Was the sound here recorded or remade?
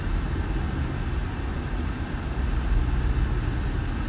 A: recorded